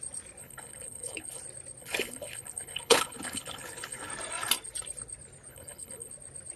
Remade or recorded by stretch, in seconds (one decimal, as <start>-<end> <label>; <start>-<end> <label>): 0.0-0.4 recorded; 0.4-1.4 remade; 1.4-1.8 recorded; 1.8-4.1 remade; 4.1-5.5 recorded; 5.5-6.1 remade; 6.1-6.6 recorded